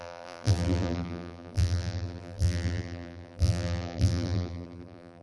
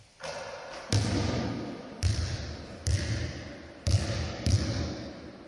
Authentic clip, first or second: second